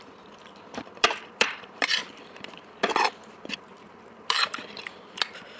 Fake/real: fake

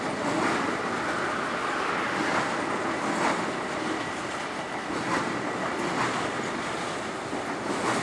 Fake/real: real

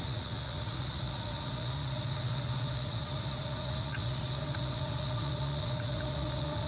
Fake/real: fake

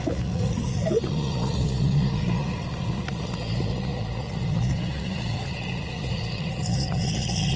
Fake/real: fake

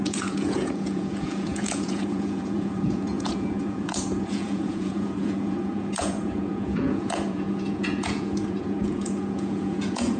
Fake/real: fake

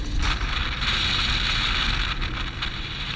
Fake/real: real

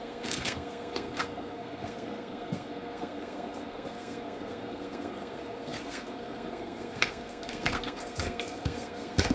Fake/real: fake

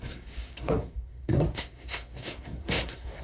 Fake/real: fake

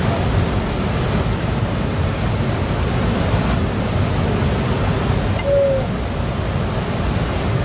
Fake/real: real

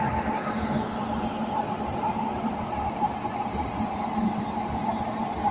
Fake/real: real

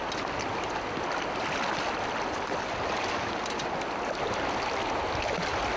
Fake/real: real